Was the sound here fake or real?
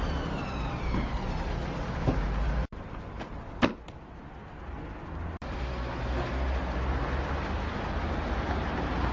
real